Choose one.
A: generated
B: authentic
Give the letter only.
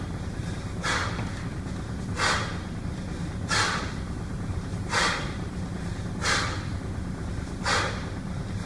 A